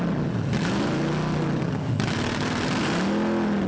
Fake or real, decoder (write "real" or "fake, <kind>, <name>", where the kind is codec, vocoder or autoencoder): real